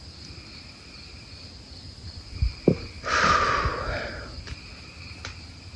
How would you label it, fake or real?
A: real